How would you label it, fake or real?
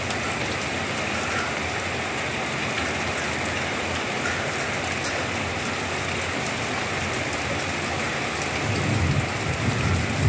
real